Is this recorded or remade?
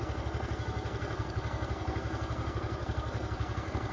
remade